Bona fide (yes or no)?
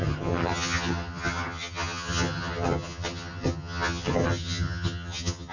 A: no